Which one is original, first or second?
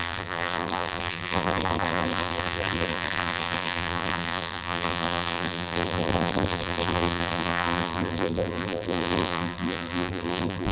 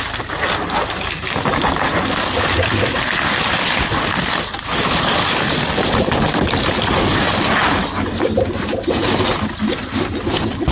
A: second